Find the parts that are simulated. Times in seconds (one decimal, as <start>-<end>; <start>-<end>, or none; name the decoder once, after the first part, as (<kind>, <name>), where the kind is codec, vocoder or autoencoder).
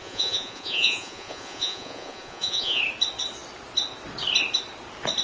0.0-2.8 (vocoder, Vocos)